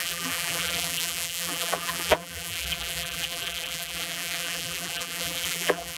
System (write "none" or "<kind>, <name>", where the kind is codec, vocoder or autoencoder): vocoder, BigVGAN v2